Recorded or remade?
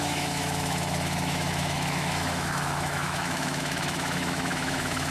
remade